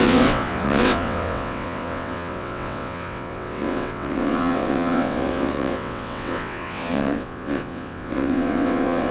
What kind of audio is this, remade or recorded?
remade